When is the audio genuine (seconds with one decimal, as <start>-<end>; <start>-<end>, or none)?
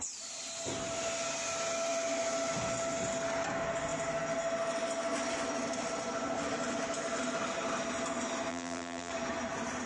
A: 0.0-8.5; 9.1-9.9